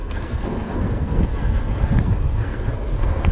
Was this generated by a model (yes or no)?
yes